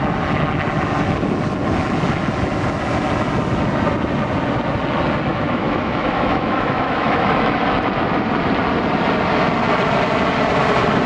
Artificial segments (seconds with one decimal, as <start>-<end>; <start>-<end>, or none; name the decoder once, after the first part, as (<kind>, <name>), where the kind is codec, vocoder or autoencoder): 5.3-7.6 (autoencoder, DAC-VAE)